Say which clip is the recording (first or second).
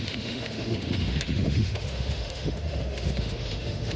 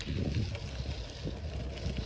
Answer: second